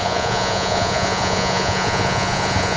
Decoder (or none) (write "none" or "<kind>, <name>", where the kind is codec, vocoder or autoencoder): vocoder, Vocos